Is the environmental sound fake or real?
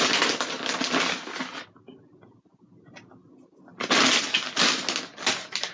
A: real